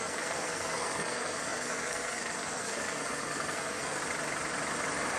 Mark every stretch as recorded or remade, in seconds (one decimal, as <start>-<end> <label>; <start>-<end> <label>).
0.0-4.0 remade; 4.0-5.2 recorded